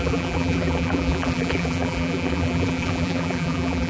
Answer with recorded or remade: remade